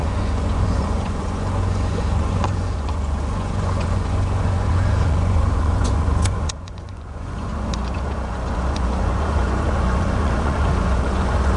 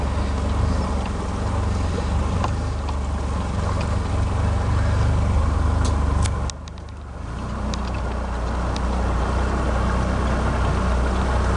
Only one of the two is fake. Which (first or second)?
first